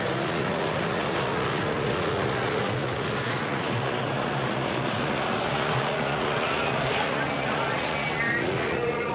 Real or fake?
fake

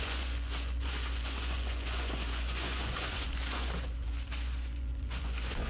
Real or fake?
fake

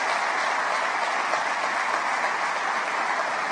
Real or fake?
real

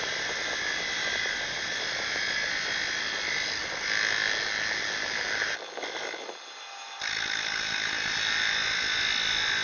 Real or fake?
real